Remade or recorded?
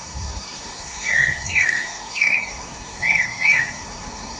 remade